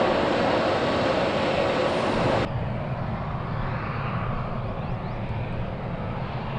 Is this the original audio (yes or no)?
yes